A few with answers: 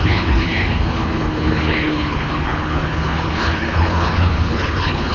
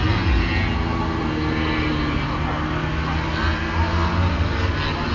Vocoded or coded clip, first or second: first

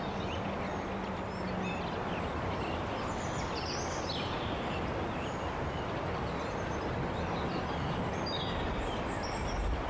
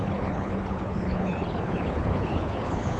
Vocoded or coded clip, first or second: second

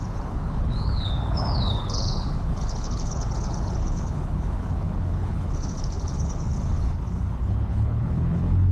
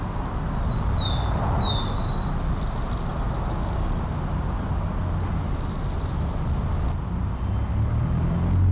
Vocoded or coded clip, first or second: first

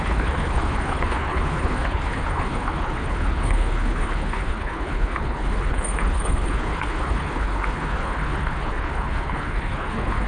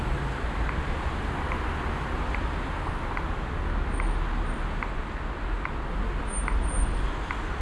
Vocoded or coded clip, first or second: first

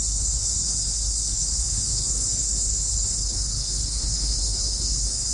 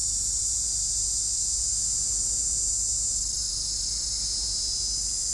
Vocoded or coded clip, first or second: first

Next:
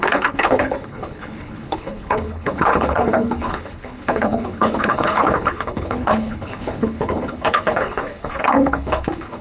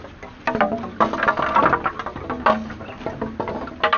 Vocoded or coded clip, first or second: first